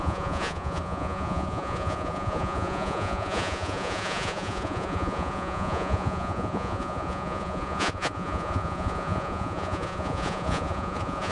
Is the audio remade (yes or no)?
yes